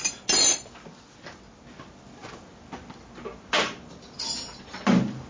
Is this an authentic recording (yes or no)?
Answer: yes